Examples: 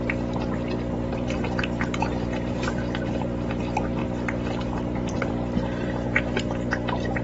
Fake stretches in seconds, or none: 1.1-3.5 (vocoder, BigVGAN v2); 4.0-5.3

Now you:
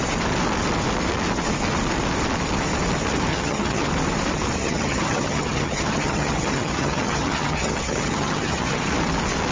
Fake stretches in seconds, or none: 3.3-3.9 (vocoder, HiFi-GAN); 4.6-8.9

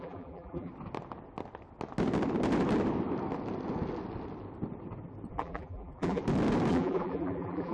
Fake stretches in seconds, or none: 0.0-0.7 (vocoder, BigVGAN v2); 5.3-6.2; 6.7-7.7

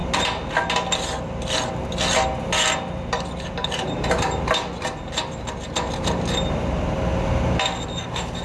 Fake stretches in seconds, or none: none

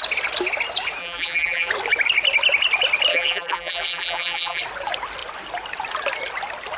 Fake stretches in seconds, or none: 1.0-1.7 (vocoder, BigVGAN v2); 3.1-4.6

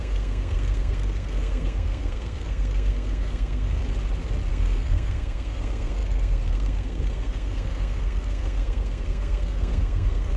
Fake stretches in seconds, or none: 0.0-3.8 (codec, SNAC); 4.5-10.4

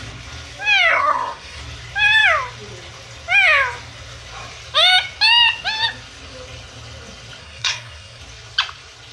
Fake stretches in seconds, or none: 0.9-1.6 (codec, SNAC); 7.4-8.2

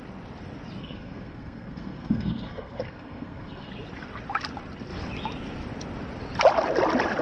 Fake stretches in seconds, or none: 0.8-3.7 (codec, SNAC)